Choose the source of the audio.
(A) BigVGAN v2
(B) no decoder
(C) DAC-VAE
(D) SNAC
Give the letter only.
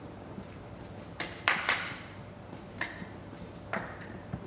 A